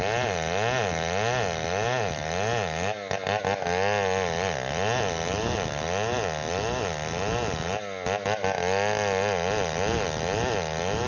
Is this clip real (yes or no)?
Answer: yes